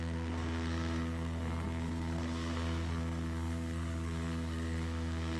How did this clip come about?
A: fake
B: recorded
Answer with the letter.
A